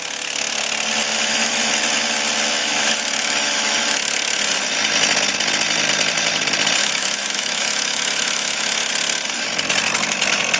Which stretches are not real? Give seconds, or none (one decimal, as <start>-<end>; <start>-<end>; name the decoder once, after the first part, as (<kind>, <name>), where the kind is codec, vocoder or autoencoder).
1.1-1.7 (autoencoder, DAC-VAE); 2.6-4.4; 6.8-8.9